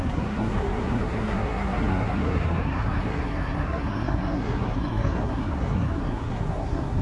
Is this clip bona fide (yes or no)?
no